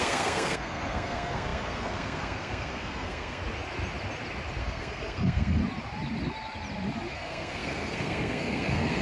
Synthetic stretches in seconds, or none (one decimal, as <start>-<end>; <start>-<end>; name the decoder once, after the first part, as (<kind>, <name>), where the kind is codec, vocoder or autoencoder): 0.0-3.4 (codec, SNAC); 4.6-5.6; 7.1-9.0